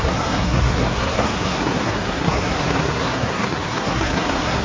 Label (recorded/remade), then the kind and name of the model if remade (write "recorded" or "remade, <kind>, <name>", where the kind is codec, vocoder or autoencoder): remade, codec, SNAC